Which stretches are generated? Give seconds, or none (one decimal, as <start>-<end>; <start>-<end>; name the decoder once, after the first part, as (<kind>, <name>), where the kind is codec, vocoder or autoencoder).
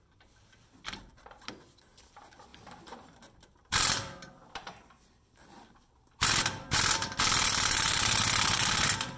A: 0.0-9.2 (vocoder, BigVGAN v2)